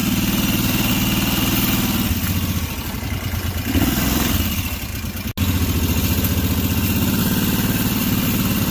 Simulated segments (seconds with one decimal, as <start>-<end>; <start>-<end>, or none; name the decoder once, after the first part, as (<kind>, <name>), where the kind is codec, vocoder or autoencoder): 0.0-4.9 (vocoder, BigVGAN v2); 7.2-8.7